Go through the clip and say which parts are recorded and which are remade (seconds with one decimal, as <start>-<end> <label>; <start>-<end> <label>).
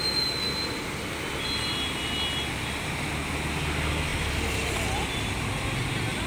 0.0-6.3 recorded